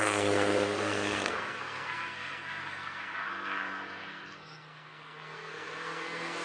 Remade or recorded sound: remade